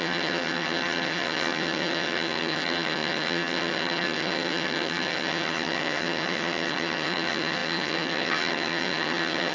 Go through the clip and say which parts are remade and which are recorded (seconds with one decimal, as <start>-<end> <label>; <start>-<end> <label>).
0.0-9.5 remade